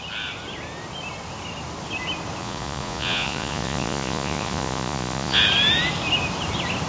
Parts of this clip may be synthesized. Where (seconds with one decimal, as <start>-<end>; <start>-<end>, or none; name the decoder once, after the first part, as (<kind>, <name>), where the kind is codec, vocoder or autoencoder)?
2.4-5.4 (vocoder, Vocos)